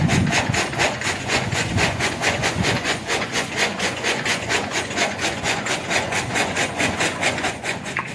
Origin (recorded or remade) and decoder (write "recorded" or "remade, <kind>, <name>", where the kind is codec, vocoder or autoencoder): remade, vocoder, Vocos